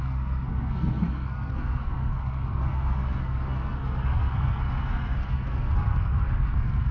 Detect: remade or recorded remade